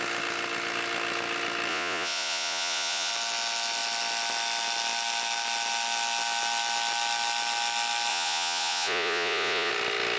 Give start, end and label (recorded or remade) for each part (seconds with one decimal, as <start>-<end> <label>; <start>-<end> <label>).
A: 0.0-1.7 recorded; 1.7-3.1 remade; 3.1-8.1 recorded; 8.1-9.7 remade; 9.7-10.2 recorded

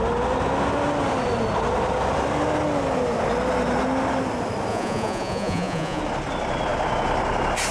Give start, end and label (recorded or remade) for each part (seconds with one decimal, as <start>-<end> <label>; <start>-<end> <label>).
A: 0.0-4.7 recorded; 4.7-6.0 remade; 6.0-7.7 recorded

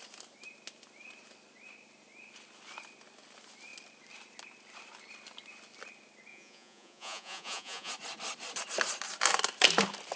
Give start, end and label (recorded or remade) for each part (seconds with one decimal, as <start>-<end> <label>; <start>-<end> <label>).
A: 0.0-6.3 recorded; 6.3-7.9 remade; 7.9-10.2 recorded

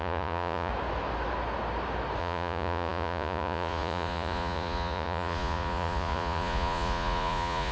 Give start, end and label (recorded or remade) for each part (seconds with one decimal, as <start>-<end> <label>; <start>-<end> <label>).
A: 0.0-0.7 remade; 0.7-2.2 recorded; 2.2-7.7 remade